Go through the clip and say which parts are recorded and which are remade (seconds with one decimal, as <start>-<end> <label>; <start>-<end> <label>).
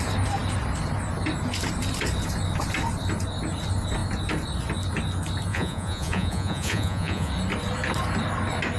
0.0-5.5 recorded; 5.5-7.3 remade; 7.3-8.8 recorded